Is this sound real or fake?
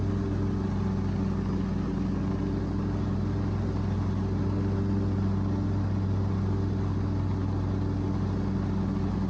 real